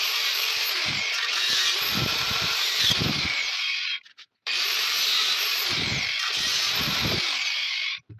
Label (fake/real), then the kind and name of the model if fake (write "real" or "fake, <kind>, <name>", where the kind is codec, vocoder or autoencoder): fake, vocoder, BigVGAN v2